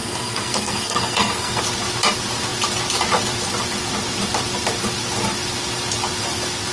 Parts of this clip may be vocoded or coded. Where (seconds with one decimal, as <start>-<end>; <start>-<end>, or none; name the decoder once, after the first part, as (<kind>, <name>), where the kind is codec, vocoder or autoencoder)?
0.0-1.6 (codec, SNAC)